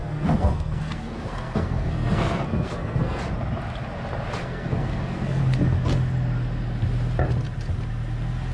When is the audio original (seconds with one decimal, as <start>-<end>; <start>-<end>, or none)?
3.2-4.4; 5.4-8.5